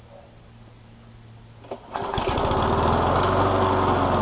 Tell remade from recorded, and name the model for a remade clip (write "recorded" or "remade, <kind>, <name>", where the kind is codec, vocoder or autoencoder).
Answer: recorded